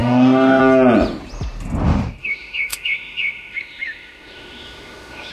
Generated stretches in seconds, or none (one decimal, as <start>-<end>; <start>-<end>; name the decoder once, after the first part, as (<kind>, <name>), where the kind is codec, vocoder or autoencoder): 0.0-0.6 (autoencoder, DAC-VAE); 2.2-5.3